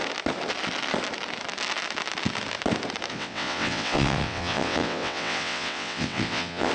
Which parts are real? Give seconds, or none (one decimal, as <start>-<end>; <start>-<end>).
0.0-3.1